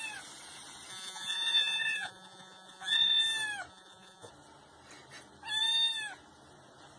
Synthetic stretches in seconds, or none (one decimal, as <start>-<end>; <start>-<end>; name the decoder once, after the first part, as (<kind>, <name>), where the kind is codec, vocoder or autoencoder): 0.9-3.2 (vocoder, Vocos); 3.7-4.3